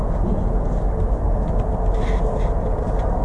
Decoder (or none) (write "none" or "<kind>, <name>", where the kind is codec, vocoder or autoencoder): none